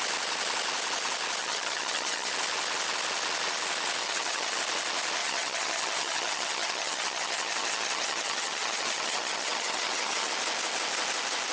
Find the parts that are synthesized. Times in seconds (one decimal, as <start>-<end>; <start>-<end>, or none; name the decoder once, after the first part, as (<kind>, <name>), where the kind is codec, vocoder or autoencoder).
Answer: 1.4-2.3 (vocoder, HiFi-GAN); 4.0-4.6; 5.2-10.3